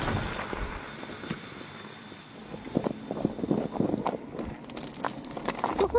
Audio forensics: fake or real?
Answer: real